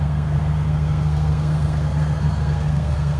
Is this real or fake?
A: fake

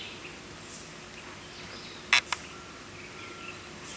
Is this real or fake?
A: real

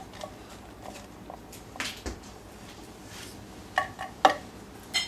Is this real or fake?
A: real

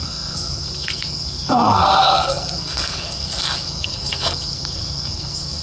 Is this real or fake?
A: fake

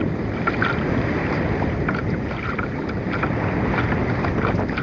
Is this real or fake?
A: real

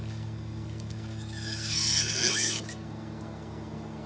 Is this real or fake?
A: fake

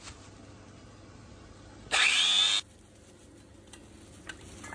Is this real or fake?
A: real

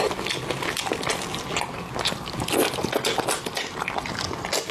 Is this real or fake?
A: real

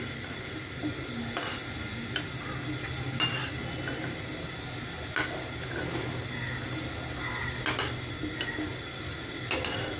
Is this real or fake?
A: real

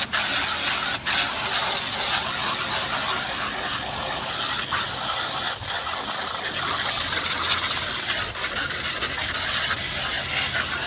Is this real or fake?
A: real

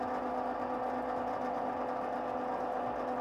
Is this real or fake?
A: real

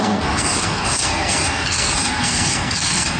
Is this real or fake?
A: fake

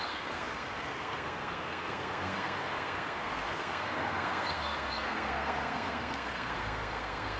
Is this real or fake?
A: fake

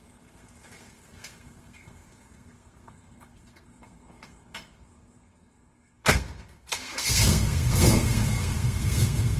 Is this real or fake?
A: fake